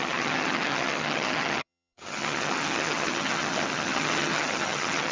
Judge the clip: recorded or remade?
remade